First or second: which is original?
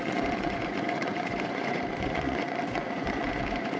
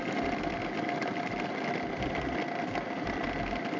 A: second